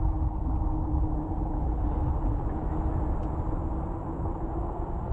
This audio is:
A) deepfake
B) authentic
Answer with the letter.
B